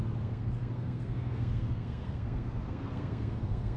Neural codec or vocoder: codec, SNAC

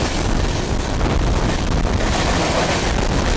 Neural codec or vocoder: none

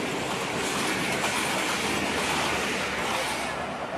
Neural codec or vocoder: none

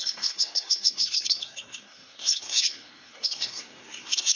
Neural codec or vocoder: codec, SNAC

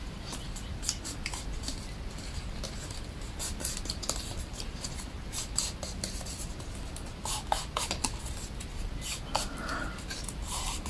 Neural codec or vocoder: none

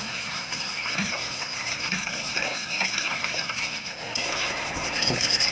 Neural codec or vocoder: codec, SNAC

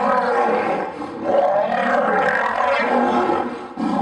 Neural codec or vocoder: none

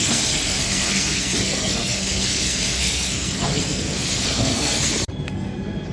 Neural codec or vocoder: codec, SNAC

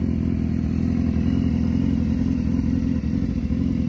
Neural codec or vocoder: none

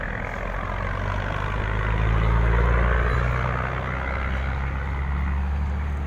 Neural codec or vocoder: none